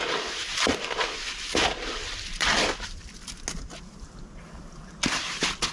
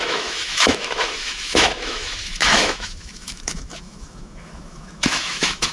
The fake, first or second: second